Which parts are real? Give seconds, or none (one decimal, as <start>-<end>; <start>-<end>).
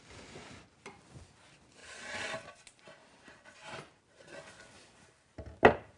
0.0-1.8; 4.0-6.0